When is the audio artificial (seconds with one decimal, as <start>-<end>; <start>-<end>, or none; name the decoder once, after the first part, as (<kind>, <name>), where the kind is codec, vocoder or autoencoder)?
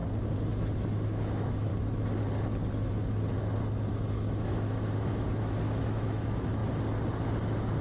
0.9-1.7 (autoencoder, DAC-VAE); 3.9-6.6